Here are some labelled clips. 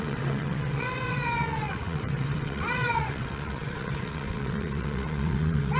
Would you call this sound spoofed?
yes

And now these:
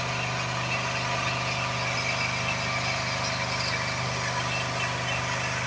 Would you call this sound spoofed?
no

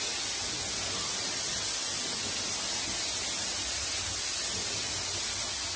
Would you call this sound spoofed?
no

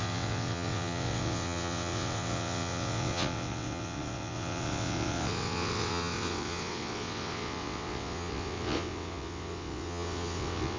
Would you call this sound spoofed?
yes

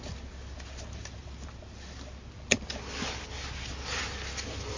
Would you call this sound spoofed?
no